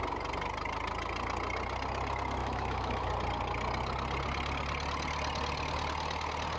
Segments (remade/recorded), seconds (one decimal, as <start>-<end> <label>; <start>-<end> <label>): 0.0-2.4 recorded; 2.4-3.1 remade; 3.1-6.6 recorded